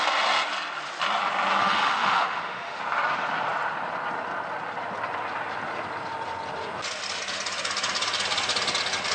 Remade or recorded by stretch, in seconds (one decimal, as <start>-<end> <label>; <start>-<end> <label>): 0.0-1.6 recorded; 1.6-2.8 remade; 2.8-9.1 recorded